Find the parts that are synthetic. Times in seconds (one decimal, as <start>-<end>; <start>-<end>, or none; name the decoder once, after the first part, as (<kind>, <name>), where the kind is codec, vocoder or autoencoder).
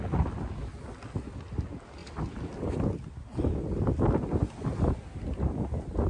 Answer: none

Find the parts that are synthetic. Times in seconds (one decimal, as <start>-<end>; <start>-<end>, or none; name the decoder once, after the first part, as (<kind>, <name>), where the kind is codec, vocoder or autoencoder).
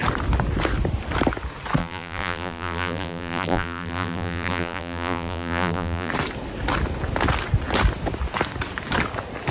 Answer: 1.8-6.1 (vocoder, BigVGAN v2)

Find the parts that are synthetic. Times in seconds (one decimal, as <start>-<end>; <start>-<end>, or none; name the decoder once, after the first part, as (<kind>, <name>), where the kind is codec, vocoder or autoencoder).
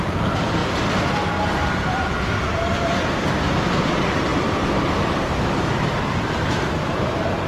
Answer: 0.0-0.6 (vocoder, BigVGAN v2); 3.9-4.3; 5.1-7.5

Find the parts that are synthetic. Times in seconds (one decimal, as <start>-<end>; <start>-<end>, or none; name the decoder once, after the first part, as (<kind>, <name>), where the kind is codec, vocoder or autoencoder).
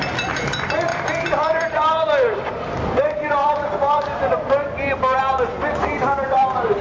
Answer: 0.0-6.8 (vocoder, BigVGAN v2)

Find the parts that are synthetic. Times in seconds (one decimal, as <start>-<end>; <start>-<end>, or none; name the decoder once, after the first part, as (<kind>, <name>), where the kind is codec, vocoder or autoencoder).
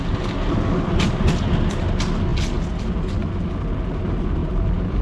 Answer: none